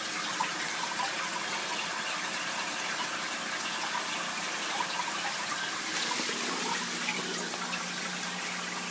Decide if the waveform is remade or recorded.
recorded